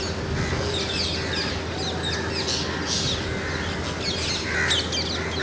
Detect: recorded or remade recorded